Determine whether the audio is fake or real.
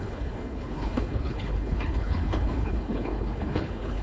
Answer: fake